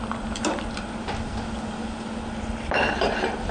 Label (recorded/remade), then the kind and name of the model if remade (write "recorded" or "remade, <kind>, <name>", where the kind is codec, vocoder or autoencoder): recorded